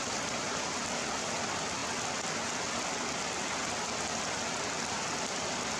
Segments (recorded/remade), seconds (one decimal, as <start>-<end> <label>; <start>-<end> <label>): 0.0-1.8 remade; 1.8-4.6 recorded; 4.6-5.8 remade